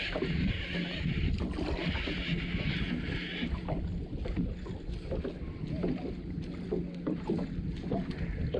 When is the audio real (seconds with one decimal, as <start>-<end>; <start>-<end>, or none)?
0.0-8.6

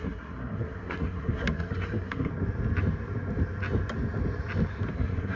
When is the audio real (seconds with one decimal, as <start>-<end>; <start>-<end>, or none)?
2.3-4.9